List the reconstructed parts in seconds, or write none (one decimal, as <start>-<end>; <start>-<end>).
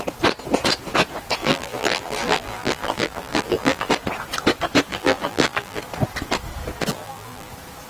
1.4-3.9; 4.9-5.8; 6.9-7.5